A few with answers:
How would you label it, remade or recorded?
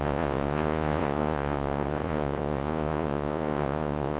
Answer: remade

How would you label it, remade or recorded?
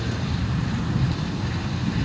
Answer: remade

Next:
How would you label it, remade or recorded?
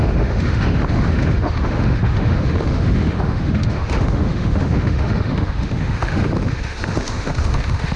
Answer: remade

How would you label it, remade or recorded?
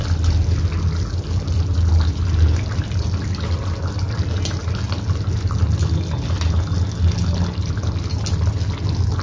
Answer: recorded